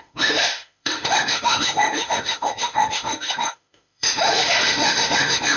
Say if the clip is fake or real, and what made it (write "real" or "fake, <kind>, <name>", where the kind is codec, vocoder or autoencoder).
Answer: fake, autoencoder, DAC-VAE